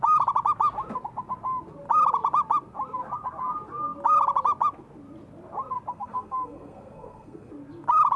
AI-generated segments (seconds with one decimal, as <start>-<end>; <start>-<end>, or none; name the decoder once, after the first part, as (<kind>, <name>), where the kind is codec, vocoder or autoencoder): 5.9-7.5 (codec, SNAC)

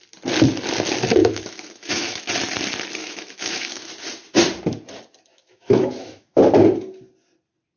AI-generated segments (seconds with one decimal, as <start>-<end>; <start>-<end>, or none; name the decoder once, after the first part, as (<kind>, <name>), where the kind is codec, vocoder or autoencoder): 1.2-2.3 (autoencoder, DAC-VAE); 3.0-3.9; 5.3-6.4

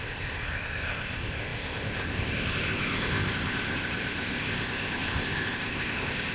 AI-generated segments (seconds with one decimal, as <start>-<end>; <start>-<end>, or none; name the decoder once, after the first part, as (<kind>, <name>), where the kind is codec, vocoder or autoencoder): 0.0-6.3 (codec, ZipCodec)